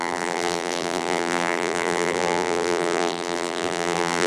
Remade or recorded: remade